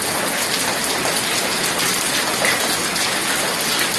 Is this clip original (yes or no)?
yes